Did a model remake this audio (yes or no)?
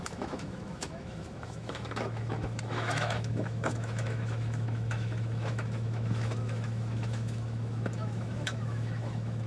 yes